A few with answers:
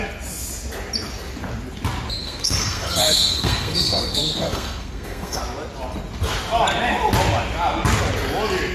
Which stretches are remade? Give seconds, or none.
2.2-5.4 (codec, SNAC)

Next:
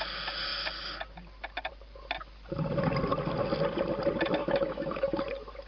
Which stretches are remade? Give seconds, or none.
4.4-5.2 (autoencoder, DAC-VAE)

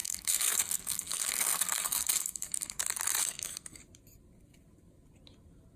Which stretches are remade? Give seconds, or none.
0.0-2.8 (codec, SNAC); 3.2-3.8

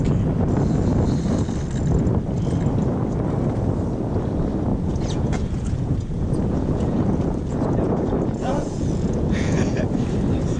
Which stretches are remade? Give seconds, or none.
4.7-9.8 (vocoder, Vocos)

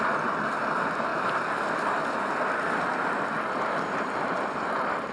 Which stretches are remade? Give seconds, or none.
none

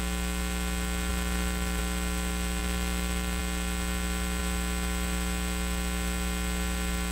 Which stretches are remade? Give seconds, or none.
1.1-1.8 (vocoder, BigVGAN v2); 2.6-3.4

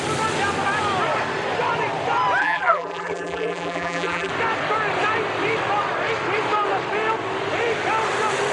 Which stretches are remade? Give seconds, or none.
2.4-4.3 (vocoder, BigVGAN v2)

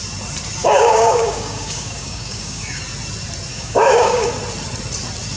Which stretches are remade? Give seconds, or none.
0.6-2.8 (codec, DAC); 3.5-4.3